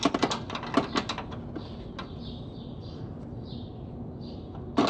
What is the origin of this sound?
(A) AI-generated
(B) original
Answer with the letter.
B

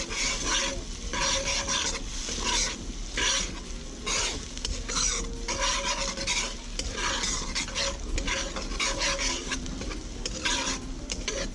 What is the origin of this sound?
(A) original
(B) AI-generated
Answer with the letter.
A